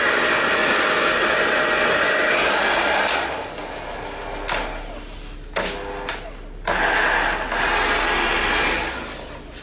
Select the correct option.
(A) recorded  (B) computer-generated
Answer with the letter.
A